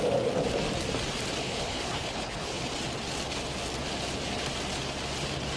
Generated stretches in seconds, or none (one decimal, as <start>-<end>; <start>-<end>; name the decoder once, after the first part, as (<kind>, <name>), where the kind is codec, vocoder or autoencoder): 1.4-2.7 (codec, HILCodec)